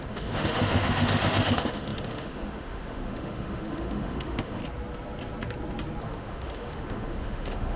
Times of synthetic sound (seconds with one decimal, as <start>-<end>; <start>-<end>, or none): 0.0-4.6; 6.0-7.8